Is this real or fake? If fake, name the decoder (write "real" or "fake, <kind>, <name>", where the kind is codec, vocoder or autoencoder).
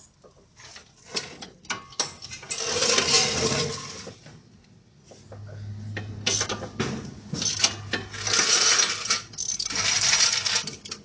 real